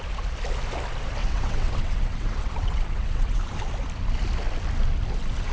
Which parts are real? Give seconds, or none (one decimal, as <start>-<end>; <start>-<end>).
0.0-1.2; 3.4-5.5